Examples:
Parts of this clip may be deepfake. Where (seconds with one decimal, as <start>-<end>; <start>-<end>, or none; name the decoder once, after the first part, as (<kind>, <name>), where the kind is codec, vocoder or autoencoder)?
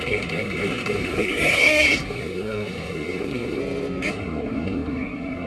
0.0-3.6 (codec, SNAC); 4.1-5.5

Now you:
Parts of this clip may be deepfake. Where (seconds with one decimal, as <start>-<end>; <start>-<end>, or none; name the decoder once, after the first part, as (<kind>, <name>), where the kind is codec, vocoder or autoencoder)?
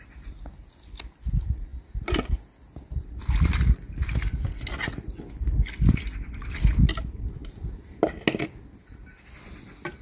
none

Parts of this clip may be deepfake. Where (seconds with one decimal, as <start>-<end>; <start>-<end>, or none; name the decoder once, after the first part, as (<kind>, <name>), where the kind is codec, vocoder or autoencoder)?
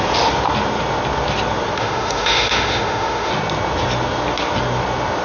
1.8-3.3 (autoencoder, DAC-VAE)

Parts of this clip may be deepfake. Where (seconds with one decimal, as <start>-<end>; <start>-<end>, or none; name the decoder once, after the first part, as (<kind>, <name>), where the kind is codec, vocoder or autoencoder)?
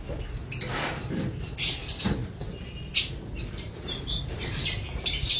2.2-5.4 (vocoder, BigVGAN v2)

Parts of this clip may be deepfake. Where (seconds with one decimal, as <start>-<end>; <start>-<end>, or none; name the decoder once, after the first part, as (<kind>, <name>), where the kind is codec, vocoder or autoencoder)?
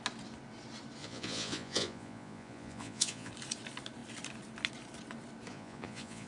1.0-3.3 (vocoder, Vocos); 5.5-6.3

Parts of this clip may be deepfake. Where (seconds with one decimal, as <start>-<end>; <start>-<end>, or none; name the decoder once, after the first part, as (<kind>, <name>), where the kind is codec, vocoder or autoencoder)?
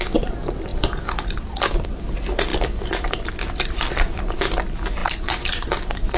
0.7-1.7 (vocoder, BigVGAN v2); 2.5-3.7; 5.0-6.2